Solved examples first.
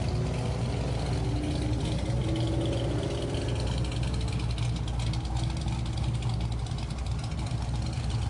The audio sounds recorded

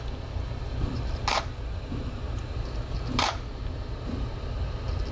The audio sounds recorded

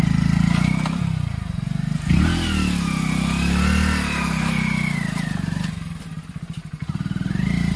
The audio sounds recorded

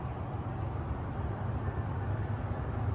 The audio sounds recorded